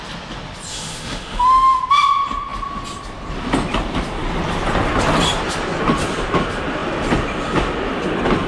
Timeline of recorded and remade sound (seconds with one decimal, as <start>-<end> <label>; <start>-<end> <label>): 0.0-0.7 recorded; 0.7-1.8 remade; 1.8-8.5 recorded